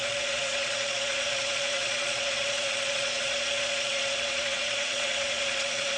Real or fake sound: fake